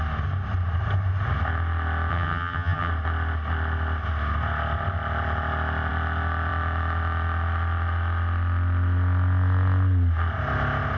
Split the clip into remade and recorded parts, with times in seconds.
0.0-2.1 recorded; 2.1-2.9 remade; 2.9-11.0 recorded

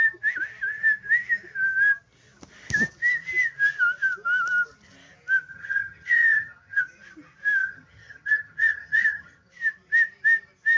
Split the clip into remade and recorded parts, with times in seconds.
0.0-5.5 recorded; 5.5-6.8 remade; 6.8-7.6 recorded; 7.6-9.5 remade; 9.5-10.8 recorded

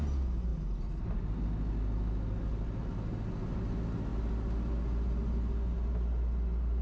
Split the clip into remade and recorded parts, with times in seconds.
0.0-6.8 recorded

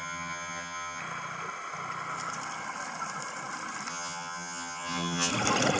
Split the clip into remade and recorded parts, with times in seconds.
0.0-1.0 remade; 1.0-3.9 recorded; 3.9-5.3 remade; 5.3-5.8 recorded

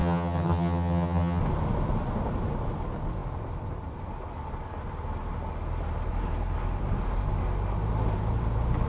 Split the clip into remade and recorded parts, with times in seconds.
0.0-1.4 remade; 1.4-8.9 recorded

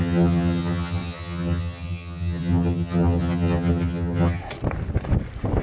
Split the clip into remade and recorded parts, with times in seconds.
0.0-4.4 remade; 4.4-5.6 recorded